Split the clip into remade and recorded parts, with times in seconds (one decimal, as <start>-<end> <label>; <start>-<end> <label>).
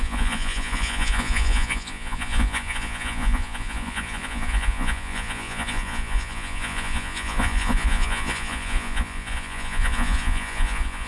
0.0-11.1 remade